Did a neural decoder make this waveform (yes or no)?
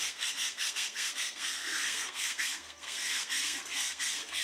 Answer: yes